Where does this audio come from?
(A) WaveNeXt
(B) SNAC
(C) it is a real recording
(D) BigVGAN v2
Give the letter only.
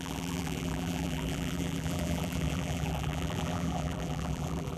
D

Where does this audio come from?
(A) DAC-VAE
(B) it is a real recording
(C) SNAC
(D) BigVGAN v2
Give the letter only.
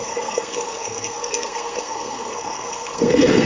C